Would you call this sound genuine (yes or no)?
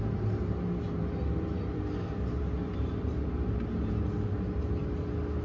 yes